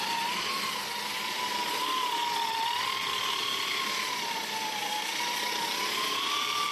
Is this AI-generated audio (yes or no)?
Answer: no